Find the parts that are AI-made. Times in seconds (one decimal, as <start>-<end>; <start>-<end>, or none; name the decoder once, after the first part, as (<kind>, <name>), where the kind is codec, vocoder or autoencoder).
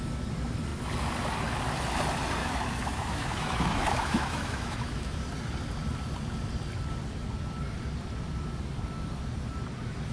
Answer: 2.4-5.2 (autoencoder, DAC-VAE)